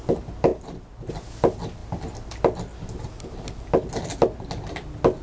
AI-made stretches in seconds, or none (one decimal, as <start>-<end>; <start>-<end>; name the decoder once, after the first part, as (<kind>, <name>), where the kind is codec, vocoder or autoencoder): none